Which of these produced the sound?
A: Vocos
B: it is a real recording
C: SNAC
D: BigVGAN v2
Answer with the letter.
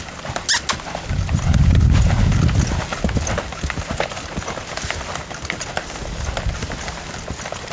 B